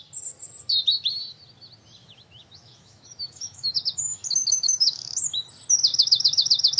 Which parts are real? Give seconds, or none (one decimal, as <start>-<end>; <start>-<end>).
0.0-2.0; 5.5-5.9